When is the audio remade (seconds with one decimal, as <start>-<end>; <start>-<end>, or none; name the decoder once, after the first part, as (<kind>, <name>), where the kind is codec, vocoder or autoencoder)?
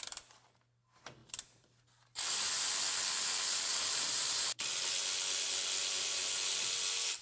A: 3.7-4.6 (vocoder, BigVGAN v2)